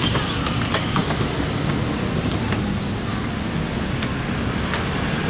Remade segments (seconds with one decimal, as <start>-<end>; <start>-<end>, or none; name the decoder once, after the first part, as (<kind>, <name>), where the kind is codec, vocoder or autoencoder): none